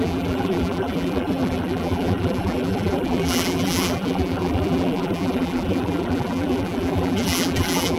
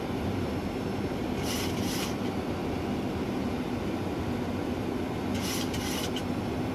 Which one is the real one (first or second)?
second